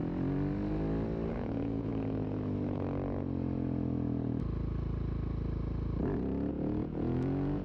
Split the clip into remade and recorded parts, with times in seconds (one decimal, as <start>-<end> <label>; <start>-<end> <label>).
0.0-1.3 recorded; 1.3-1.9 remade; 1.9-6.5 recorded; 6.5-7.6 remade

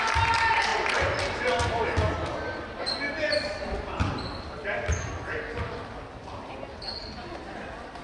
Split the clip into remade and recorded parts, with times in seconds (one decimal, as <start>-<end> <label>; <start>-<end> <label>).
0.0-8.0 recorded

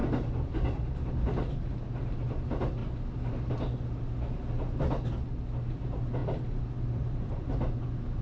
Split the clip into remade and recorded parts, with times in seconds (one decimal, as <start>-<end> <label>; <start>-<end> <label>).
0.0-8.2 recorded

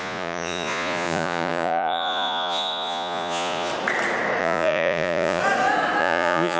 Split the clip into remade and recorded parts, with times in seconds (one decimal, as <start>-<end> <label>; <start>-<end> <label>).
0.0-3.7 remade; 3.7-4.4 recorded; 4.4-5.4 remade; 5.4-6.0 recorded; 6.0-6.6 remade

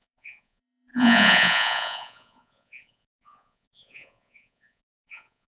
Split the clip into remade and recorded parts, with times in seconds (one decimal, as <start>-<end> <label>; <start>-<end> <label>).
0.0-5.5 remade

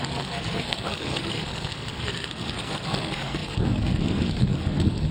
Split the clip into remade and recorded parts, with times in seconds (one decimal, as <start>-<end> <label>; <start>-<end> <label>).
0.0-5.1 remade

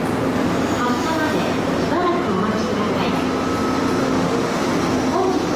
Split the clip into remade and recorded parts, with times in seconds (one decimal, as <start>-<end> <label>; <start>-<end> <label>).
0.0-4.0 recorded; 4.0-4.6 remade; 4.6-5.6 recorded